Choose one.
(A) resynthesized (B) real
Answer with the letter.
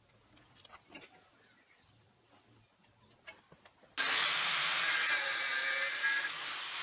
B